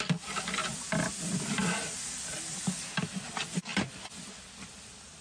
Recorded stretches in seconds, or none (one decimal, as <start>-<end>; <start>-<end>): 0.0-5.2